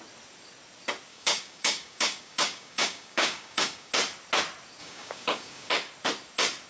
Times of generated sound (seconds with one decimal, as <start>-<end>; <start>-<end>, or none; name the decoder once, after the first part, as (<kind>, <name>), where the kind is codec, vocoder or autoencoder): 1.1-3.9 (codec, DAC); 4.8-5.7